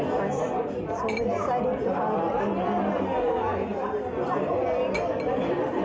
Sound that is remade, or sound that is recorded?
recorded